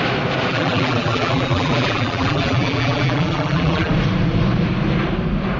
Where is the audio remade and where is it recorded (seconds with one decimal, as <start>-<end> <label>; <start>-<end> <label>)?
0.0-0.5 recorded; 0.5-3.9 remade; 3.9-5.6 recorded